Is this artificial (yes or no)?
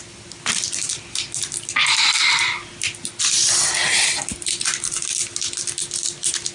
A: no